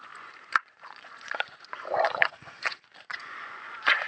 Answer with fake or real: fake